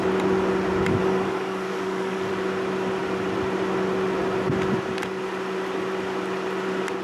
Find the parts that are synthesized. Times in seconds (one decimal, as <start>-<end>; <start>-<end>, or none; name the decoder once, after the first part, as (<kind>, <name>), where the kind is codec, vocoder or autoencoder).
1.0-2.3 (codec, DAC)